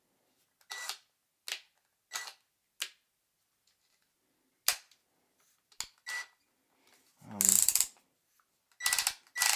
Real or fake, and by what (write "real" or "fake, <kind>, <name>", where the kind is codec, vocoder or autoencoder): real